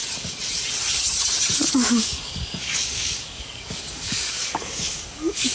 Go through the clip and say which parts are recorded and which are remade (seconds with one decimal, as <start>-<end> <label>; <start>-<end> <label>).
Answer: 0.0-1.7 recorded; 1.7-5.5 remade